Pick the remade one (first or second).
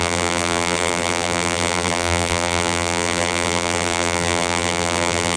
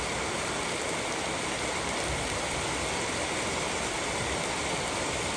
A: first